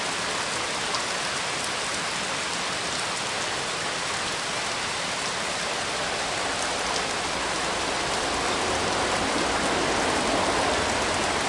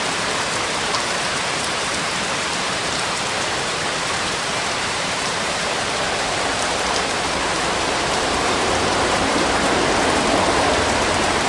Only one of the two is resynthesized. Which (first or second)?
second